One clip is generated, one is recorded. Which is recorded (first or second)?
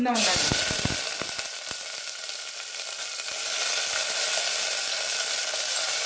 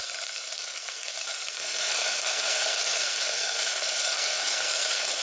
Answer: first